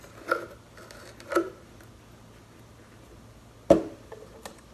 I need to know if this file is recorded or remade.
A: recorded